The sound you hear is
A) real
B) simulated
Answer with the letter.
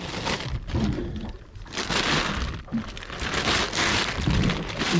A